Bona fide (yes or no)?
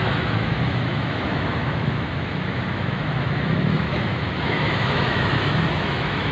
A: no